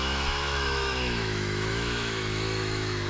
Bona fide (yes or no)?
no